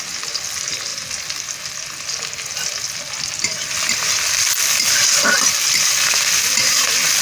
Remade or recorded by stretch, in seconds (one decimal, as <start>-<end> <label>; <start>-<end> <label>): 0.0-7.2 recorded